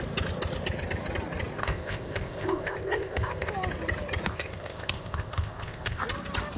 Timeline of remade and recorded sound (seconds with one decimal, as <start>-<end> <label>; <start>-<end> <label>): 0.0-1.6 recorded; 1.6-3.5 remade; 3.5-4.3 recorded; 4.3-6.0 remade; 6.0-6.6 recorded